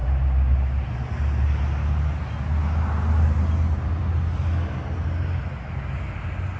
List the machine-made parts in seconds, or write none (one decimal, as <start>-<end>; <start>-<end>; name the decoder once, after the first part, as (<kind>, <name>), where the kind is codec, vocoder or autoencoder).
none